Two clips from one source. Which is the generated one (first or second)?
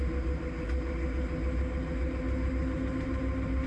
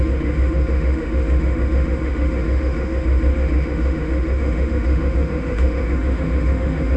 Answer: second